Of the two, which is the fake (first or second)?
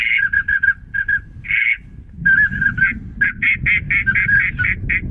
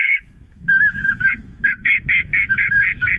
second